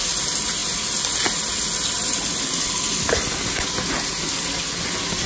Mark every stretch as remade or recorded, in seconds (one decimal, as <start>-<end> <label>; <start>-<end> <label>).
0.0-5.3 recorded